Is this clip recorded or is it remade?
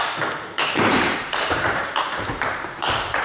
remade